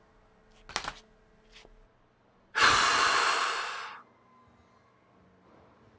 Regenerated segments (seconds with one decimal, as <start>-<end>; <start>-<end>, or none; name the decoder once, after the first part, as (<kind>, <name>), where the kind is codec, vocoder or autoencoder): none